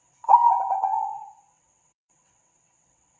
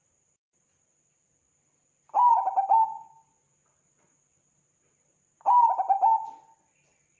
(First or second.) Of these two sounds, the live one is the second